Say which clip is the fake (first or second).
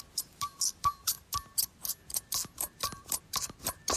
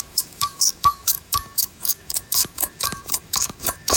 second